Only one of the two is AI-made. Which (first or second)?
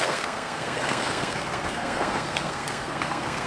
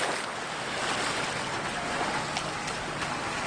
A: first